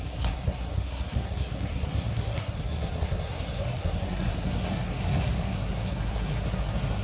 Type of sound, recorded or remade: remade